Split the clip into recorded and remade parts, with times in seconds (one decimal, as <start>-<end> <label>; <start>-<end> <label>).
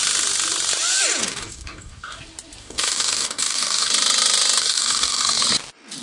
0.0-1.2 recorded; 1.2-2.2 remade; 2.2-2.6 recorded; 2.6-3.9 remade; 3.9-4.6 recorded; 4.6-5.4 remade; 5.4-6.0 recorded